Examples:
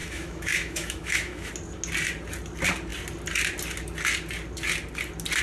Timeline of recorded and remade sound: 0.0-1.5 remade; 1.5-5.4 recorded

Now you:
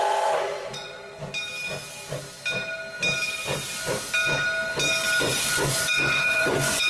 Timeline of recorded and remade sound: 0.0-1.3 remade; 1.3-5.2 recorded; 5.2-6.9 remade

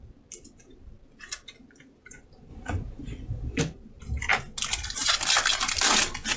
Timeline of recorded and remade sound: 0.0-2.5 recorded; 2.5-3.6 remade; 3.6-6.4 recorded

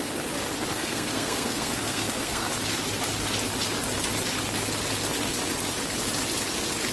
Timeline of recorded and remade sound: 0.0-0.7 recorded; 0.7-2.5 remade; 2.5-6.9 recorded